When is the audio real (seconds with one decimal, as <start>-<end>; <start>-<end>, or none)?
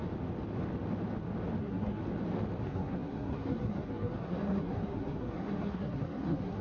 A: 0.0-1.6; 2.0-2.6